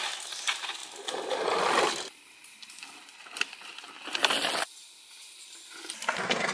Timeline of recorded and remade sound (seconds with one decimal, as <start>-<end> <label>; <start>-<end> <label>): 0.0-0.8 recorded; 0.8-1.6 remade; 1.6-6.5 recorded